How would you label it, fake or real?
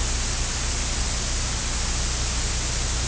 real